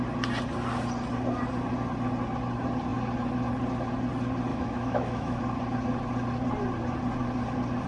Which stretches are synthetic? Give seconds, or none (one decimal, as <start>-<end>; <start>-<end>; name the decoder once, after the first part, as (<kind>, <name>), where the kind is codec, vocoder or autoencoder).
4.5-5.4 (autoencoder, DAC-VAE)